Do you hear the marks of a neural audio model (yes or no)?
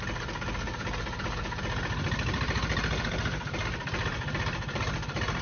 yes